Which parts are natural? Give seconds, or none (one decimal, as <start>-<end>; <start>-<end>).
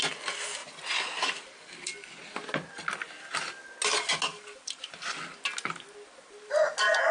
0.0-4.3; 5.1-7.1